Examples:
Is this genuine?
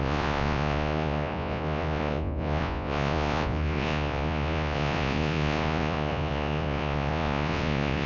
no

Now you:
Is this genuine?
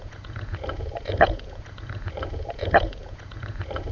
no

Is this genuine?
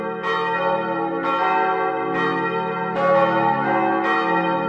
yes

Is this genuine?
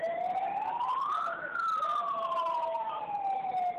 yes